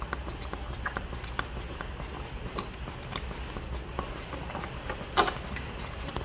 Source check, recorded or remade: recorded